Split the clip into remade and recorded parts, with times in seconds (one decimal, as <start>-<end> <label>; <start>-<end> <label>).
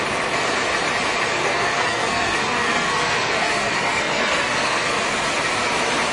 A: 0.0-1.3 recorded; 1.3-5.0 remade; 5.0-6.1 recorded